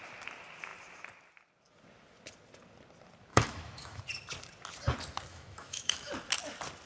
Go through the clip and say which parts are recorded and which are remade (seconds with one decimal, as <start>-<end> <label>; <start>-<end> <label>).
0.0-3.3 recorded; 3.3-4.0 remade; 4.0-5.3 recorded; 5.3-6.1 remade; 6.1-6.9 recorded